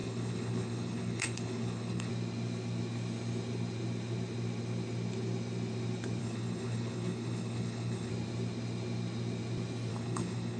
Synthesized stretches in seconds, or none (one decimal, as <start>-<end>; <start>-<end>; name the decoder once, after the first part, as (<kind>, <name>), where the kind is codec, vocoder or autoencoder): 0.0-2.1 (codec, HILCodec); 6.2-8.1; 9.9-10.6